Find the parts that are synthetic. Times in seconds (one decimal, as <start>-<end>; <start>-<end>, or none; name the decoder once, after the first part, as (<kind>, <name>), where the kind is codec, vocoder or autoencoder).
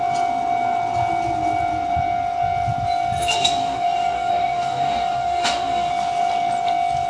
3.2-5.9 (codec, DAC)